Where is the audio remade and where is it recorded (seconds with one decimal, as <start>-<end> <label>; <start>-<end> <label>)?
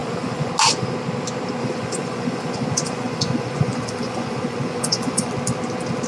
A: 0.0-0.5 remade; 0.5-1.6 recorded; 1.6-5.3 remade; 5.3-6.1 recorded